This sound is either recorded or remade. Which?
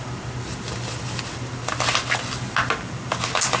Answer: recorded